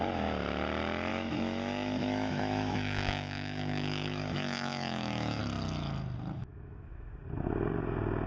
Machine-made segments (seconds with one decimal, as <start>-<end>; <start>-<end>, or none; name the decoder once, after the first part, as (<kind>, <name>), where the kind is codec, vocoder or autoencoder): 1.1-5.4 (autoencoder, DAC-VAE); 6.4-7.1